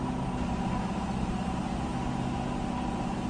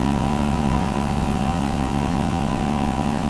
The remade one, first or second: second